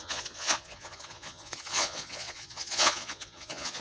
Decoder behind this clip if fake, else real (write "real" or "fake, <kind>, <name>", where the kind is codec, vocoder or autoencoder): fake, vocoder, Vocos